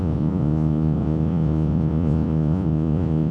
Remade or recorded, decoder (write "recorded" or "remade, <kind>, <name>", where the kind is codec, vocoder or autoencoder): remade, vocoder, Vocos